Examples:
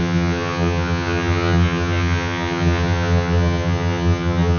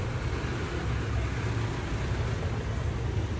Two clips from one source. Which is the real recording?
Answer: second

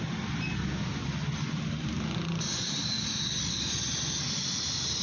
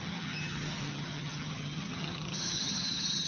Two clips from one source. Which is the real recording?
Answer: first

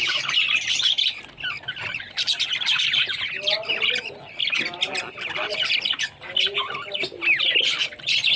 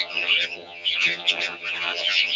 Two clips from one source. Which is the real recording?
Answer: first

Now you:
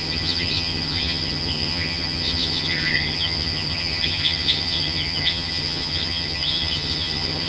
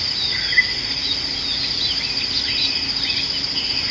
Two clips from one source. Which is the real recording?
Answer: second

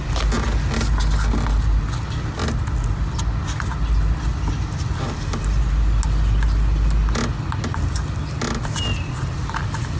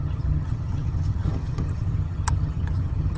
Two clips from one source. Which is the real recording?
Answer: first